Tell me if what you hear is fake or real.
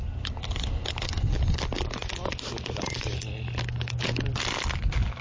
real